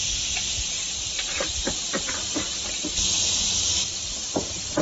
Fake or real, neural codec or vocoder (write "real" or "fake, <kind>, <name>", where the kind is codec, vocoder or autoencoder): real